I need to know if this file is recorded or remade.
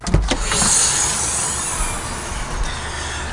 recorded